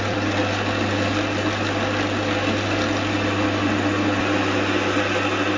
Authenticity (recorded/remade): recorded